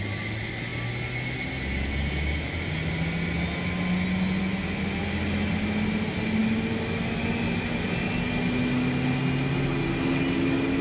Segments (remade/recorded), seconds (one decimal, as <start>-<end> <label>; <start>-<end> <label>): 0.0-10.8 recorded